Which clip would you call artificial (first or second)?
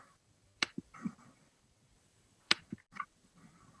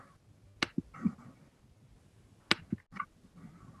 first